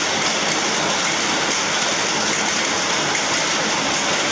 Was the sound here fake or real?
real